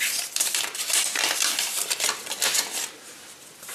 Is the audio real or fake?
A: fake